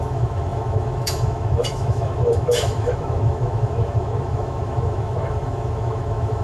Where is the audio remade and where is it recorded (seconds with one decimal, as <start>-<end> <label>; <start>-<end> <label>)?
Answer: 0.0-6.4 remade